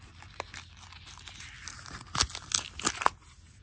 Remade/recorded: recorded